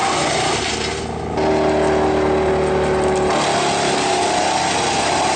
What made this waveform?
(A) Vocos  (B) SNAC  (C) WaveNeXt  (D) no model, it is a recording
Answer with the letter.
D